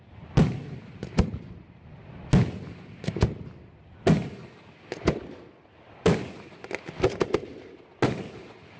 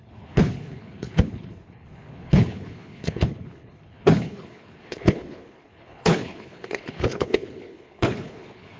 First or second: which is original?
first